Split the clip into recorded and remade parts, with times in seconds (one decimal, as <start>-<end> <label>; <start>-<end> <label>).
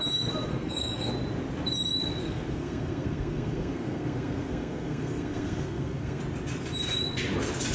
0.0-0.5 recorded; 0.5-1.1 remade; 1.1-2.2 recorded; 2.2-6.2 remade; 6.2-7.7 recorded